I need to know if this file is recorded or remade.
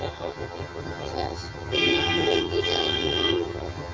remade